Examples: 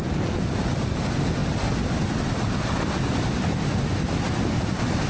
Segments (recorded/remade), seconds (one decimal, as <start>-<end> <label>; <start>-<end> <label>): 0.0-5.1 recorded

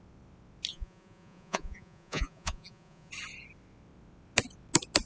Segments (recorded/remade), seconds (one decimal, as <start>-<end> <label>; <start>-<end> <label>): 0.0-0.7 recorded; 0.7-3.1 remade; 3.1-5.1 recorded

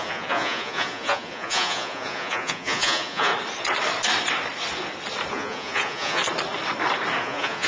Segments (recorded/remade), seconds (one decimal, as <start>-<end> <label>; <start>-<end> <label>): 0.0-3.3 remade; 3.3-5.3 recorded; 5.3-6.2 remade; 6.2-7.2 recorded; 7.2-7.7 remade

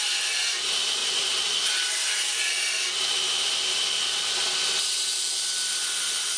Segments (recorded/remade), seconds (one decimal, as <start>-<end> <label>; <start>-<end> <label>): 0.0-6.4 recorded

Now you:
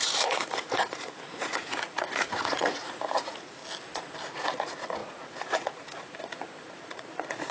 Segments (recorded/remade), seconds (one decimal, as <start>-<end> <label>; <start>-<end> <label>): 0.0-3.6 remade; 3.6-4.3 recorded; 4.3-7.5 remade

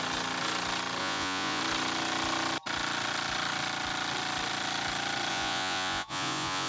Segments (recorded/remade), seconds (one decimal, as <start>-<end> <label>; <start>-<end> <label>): 0.0-1.0 recorded; 1.0-1.6 remade; 1.6-5.3 recorded; 5.3-6.7 remade

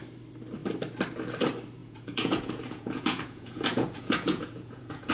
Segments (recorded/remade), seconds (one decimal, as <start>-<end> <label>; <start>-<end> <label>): 0.0-1.8 recorded; 1.8-5.1 remade

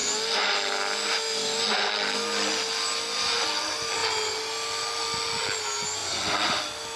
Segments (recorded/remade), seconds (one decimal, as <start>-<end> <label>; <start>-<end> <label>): 0.0-6.0 recorded; 6.0-6.6 remade; 6.6-7.0 recorded